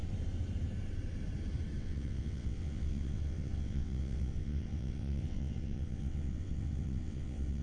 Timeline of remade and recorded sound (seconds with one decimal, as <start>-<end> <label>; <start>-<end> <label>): 0.0-1.8 recorded; 1.8-7.6 remade

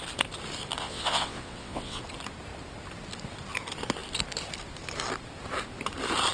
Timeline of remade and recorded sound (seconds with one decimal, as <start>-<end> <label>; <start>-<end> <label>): 0.0-0.8 recorded; 0.8-2.0 remade; 2.0-6.3 recorded

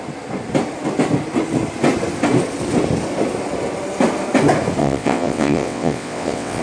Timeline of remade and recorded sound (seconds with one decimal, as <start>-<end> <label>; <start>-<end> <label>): 0.0-4.8 recorded; 4.8-6.6 remade

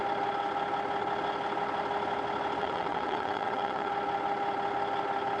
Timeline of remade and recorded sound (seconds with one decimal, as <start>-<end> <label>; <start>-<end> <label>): 0.0-2.6 recorded; 2.6-3.9 remade; 3.9-5.4 recorded

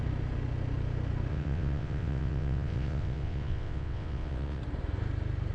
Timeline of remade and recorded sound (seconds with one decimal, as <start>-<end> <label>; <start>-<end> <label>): 0.0-1.3 recorded; 1.3-4.6 remade; 4.6-5.5 recorded

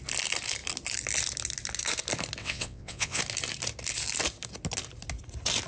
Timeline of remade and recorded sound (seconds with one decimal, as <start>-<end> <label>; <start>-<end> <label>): 0.0-2.4 recorded; 2.4-3.2 remade; 3.2-5.7 recorded

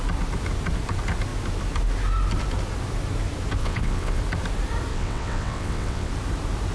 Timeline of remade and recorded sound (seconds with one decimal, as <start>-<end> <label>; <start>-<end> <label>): 0.0-3.6 recorded; 3.6-4.2 remade; 4.2-4.9 recorded; 4.9-6.1 remade; 6.1-6.7 recorded